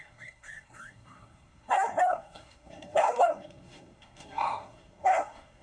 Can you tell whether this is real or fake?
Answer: fake